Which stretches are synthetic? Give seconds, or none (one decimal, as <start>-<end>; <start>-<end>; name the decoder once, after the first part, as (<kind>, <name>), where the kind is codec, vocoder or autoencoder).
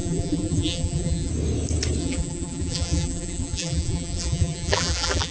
0.0-1.3 (vocoder, BigVGAN v2); 2.0-5.3